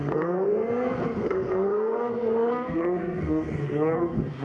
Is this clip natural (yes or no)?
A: no